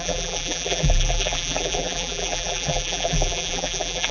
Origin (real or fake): fake